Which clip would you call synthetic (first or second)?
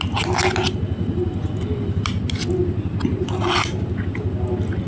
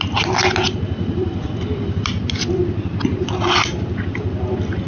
second